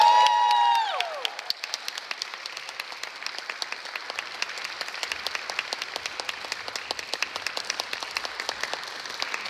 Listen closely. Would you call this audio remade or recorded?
recorded